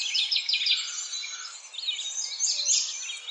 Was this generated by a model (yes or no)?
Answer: no